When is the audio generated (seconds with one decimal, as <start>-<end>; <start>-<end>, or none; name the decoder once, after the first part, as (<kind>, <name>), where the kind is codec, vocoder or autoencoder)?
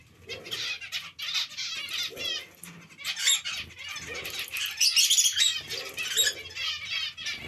none